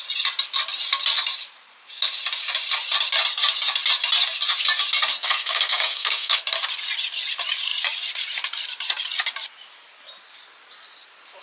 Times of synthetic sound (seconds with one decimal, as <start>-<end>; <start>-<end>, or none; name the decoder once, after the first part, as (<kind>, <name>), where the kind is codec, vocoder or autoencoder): 5.2-6.4 (codec, SNAC)